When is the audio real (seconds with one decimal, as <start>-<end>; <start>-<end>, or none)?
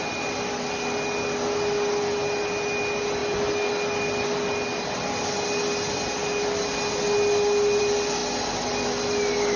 0.0-9.6